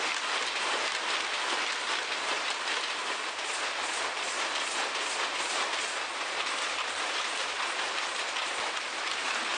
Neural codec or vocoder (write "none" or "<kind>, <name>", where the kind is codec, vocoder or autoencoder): none